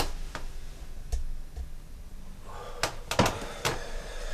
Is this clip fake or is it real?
real